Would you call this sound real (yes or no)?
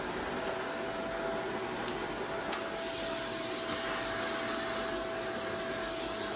yes